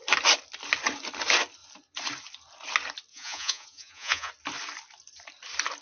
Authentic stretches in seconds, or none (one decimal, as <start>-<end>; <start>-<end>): 0.0-3.1; 4.3-5.8

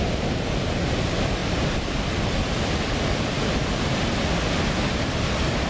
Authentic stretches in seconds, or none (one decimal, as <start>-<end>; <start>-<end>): 0.0-1.4; 3.4-5.7

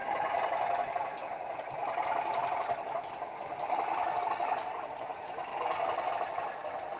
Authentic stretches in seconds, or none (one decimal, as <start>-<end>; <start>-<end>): 5.5-6.1

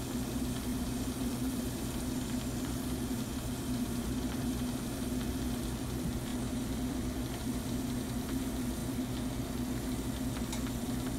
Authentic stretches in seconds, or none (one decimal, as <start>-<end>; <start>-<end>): 0.0-0.7; 4.6-6.3; 7.8-11.2

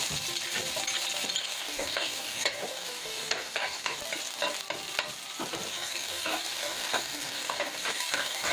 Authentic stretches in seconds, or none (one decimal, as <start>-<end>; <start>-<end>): 0.0-1.4; 4.0-5.7

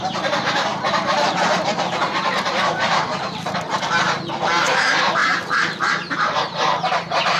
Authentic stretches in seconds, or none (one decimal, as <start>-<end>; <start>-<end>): none